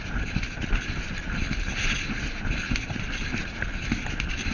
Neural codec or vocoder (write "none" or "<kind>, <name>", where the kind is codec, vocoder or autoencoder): none